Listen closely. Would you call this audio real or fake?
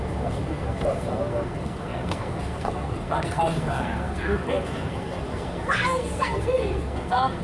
fake